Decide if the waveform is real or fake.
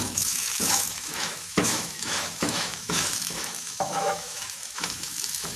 fake